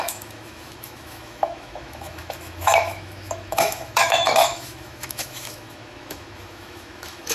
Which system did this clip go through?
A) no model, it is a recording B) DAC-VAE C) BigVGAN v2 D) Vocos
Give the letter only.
B